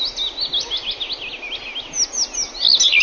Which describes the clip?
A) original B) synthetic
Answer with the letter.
A